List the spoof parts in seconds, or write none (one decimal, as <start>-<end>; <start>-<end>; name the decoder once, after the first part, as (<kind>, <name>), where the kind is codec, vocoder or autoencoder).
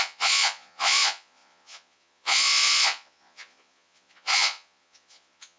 0.0-5.6 (vocoder, Vocos)